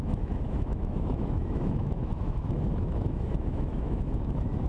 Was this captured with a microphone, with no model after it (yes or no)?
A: no